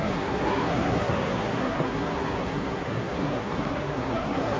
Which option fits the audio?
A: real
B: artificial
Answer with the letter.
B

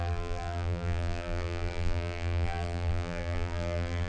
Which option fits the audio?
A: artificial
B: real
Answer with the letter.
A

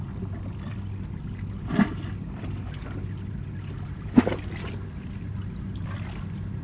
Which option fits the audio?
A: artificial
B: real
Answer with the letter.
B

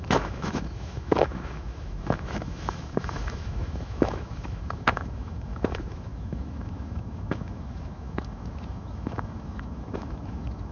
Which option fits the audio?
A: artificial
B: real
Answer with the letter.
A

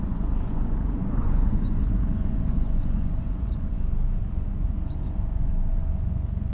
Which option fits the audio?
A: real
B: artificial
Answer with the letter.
B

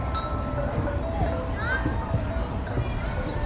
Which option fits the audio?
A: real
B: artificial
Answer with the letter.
A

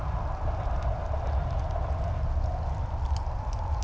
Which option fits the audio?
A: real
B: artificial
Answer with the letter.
A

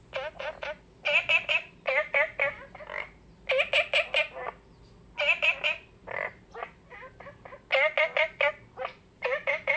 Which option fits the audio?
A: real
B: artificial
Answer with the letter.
A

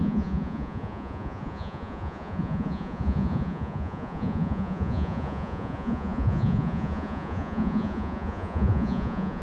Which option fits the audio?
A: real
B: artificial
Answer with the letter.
B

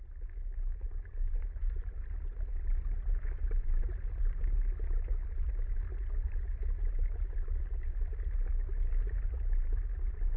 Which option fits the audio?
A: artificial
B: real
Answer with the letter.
B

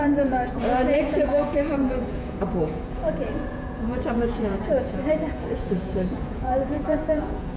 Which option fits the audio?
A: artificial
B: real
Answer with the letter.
A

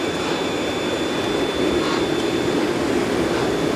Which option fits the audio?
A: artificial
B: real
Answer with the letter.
B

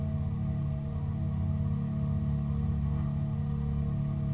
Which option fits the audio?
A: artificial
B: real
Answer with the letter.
B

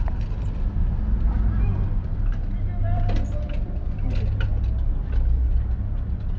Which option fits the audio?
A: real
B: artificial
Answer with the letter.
A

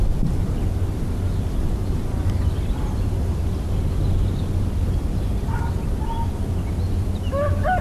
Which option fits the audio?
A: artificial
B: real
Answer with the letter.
B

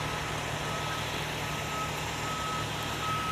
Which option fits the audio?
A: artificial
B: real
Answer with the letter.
B